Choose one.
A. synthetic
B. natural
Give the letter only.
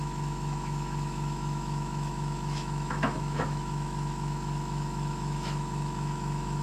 A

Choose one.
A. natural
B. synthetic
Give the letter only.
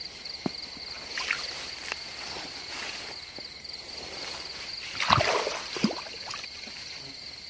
A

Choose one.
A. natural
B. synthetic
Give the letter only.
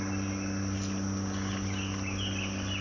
A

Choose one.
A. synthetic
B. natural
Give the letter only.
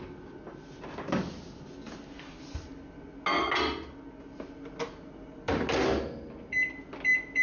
B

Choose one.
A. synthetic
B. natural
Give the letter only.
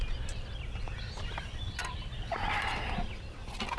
B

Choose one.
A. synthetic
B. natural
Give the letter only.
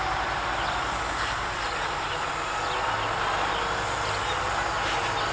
B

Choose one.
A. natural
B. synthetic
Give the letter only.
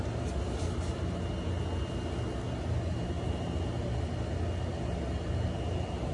A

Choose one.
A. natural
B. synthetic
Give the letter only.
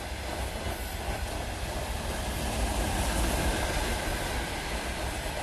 A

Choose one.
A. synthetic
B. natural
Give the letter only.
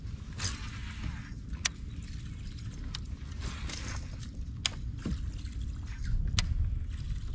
B